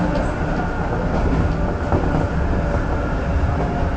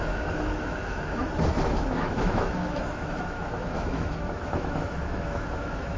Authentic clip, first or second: first